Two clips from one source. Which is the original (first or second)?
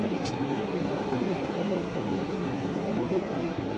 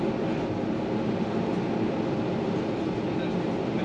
second